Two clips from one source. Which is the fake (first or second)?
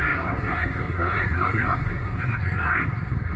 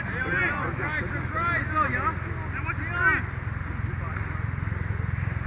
first